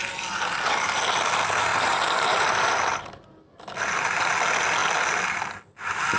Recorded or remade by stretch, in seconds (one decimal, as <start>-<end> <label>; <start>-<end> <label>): 0.0-1.7 recorded; 1.7-2.7 remade; 2.7-6.2 recorded